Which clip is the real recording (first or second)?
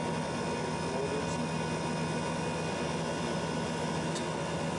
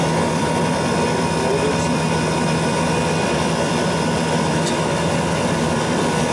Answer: first